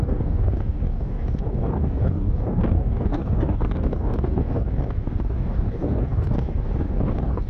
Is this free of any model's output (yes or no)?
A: no